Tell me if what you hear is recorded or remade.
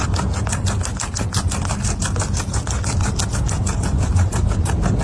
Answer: recorded